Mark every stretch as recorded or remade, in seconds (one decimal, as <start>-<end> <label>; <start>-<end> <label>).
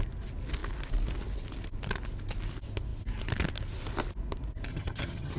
0.0-4.7 recorded; 4.7-5.4 remade